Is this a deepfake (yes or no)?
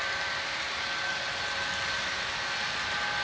no